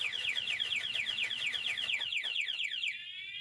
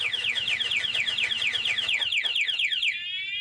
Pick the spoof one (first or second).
first